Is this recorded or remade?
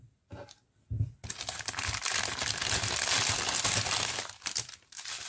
recorded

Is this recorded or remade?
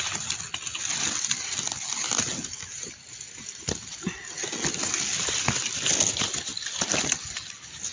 recorded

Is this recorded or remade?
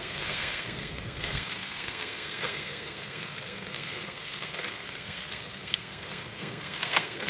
remade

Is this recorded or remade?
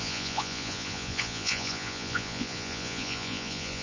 remade